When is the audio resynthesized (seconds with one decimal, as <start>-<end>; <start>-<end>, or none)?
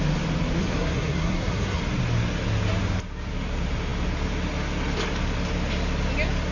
0.6-1.8